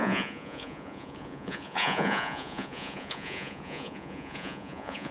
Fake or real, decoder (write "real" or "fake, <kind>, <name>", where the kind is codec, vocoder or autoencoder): fake, vocoder, Vocos